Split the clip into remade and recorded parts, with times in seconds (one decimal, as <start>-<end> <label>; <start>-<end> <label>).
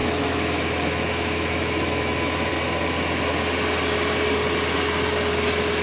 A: 0.0-2.5 remade; 2.5-5.8 recorded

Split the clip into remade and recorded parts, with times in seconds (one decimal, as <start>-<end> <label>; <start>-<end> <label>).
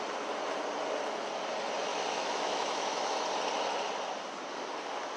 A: 0.0-1.9 recorded; 1.9-3.1 remade; 3.1-5.2 recorded